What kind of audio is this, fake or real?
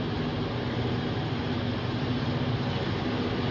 real